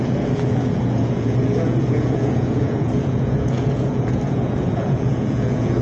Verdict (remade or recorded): remade